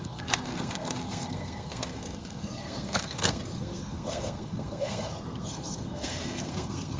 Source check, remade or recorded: remade